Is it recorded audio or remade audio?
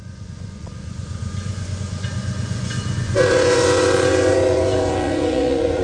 remade